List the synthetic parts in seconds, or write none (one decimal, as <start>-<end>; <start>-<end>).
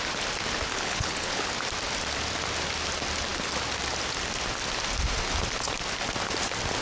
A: 0.7-1.5